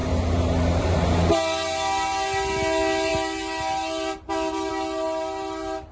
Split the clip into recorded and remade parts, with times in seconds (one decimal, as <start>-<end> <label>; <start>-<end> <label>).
0.0-5.9 recorded

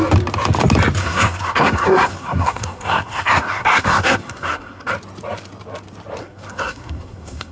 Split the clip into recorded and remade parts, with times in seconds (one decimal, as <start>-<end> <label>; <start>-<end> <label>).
0.0-1.0 recorded; 1.0-4.9 remade; 4.9-6.2 recorded; 6.2-7.5 remade

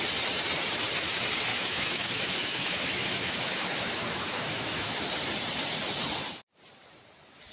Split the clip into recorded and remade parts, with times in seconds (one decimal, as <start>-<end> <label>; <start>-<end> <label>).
0.0-1.5 recorded; 1.5-5.0 remade; 5.0-7.5 recorded

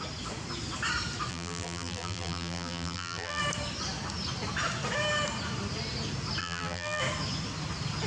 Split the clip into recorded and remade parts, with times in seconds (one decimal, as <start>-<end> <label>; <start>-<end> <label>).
0.0-1.3 recorded; 1.3-3.4 remade; 3.4-6.4 recorded; 6.4-7.0 remade; 7.0-8.1 recorded